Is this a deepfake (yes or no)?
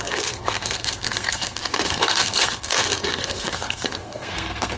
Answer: yes